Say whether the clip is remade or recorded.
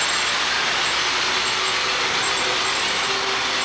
recorded